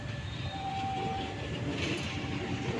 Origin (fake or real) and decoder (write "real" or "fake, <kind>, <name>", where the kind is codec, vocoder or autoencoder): fake, vocoder, BigVGAN v2